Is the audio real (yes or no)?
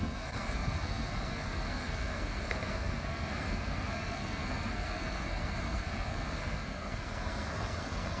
no